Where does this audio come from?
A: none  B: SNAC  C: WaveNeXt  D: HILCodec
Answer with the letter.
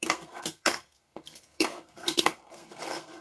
B